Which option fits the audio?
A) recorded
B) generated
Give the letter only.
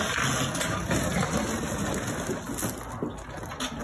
A